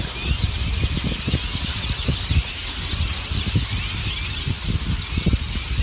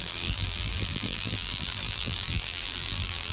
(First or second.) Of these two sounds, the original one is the first